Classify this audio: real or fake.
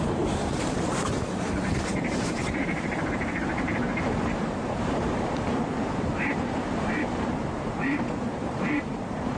fake